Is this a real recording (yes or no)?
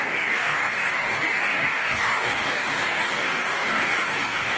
no